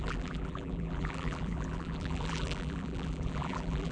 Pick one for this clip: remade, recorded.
remade